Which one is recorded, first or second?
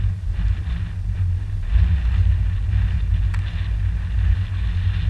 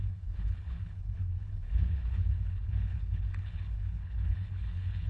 first